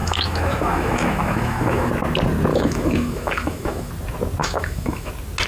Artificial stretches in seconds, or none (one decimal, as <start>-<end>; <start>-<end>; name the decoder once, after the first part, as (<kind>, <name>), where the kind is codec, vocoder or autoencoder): 0.0-1.9 (autoencoder, DAC-VAE); 2.5-3.9; 4.4-5.1